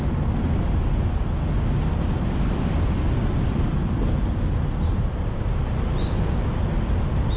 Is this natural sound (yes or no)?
yes